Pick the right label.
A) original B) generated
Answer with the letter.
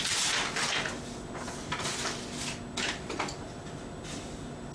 A